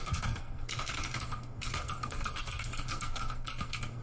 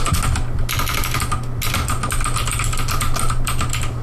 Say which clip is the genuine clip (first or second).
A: second